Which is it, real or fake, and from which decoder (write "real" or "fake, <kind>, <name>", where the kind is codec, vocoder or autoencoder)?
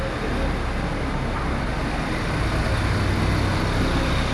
real